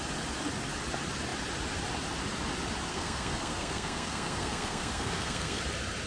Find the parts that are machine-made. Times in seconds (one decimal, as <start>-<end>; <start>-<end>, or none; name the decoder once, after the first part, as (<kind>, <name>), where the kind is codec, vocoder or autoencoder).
2.9-5.6 (codec, SNAC)